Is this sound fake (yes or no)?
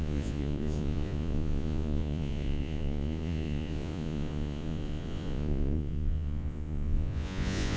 yes